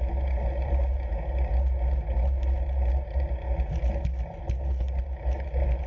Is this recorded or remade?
recorded